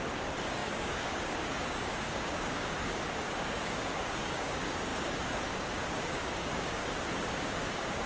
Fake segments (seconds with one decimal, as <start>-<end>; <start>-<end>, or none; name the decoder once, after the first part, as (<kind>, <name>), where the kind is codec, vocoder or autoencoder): 0.0-6.8 (codec, DAC); 7.3-8.1